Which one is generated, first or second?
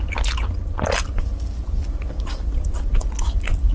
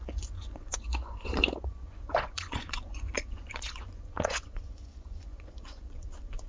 second